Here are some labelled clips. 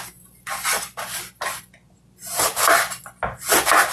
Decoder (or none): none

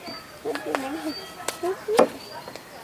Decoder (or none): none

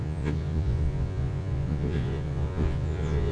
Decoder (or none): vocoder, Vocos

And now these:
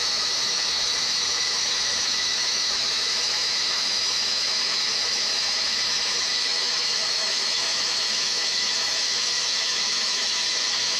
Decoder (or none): autoencoder, DAC-VAE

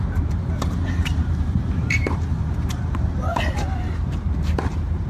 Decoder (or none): vocoder, BigVGAN v2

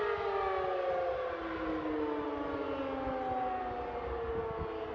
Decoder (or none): none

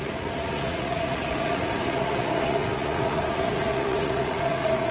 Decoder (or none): vocoder, Vocos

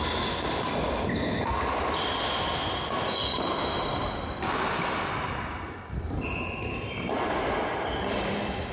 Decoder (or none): none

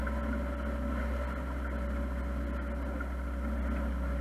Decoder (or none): none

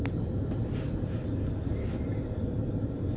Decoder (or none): none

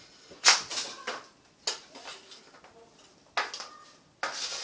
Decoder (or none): none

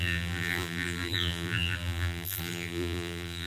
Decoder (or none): vocoder, BigVGAN v2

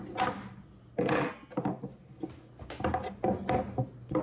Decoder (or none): none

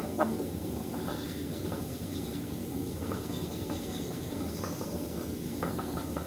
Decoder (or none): codec, SNAC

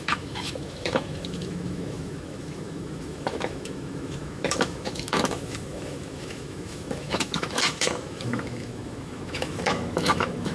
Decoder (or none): autoencoder, DAC-VAE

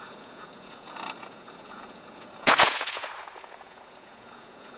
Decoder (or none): vocoder, Vocos